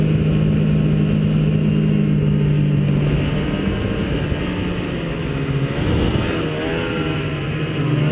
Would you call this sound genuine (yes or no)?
yes